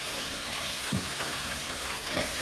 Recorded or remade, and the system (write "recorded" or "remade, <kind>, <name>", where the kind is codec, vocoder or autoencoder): remade, codec, SNAC